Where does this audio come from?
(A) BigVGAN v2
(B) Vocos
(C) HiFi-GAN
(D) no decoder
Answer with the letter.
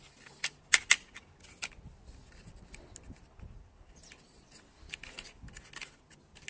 D